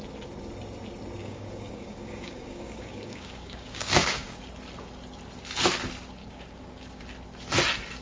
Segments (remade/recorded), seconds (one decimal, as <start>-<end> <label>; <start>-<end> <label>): 0.0-1.2 recorded; 1.2-4.4 remade; 4.4-6.2 recorded; 6.2-7.0 remade; 7.0-8.0 recorded